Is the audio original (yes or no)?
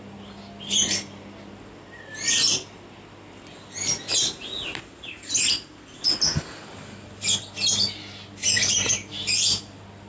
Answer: yes